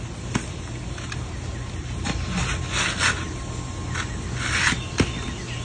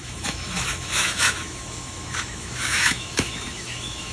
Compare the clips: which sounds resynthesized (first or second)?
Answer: second